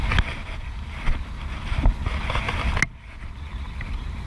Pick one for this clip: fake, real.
real